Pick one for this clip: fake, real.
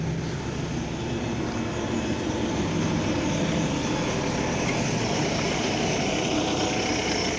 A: real